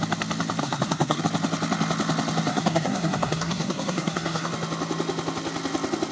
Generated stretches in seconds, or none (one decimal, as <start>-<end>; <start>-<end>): 0.6-1.2; 2.5-4.5